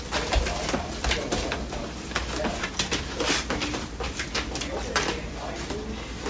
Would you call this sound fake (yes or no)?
no